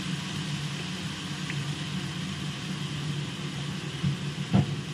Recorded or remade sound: recorded